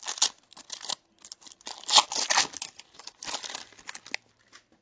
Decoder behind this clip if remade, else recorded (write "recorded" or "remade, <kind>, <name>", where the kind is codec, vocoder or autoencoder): recorded